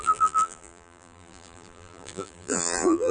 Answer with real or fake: fake